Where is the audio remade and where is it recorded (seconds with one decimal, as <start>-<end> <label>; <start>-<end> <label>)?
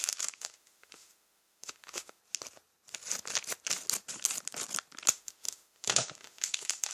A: 0.0-2.2 remade; 2.2-5.1 recorded; 5.1-6.9 remade